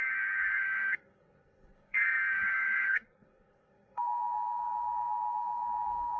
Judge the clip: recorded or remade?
remade